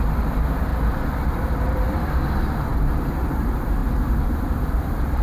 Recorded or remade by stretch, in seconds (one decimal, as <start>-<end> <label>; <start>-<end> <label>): 0.0-0.7 remade; 0.7-1.3 recorded; 1.3-3.8 remade; 3.8-4.4 recorded; 4.4-5.2 remade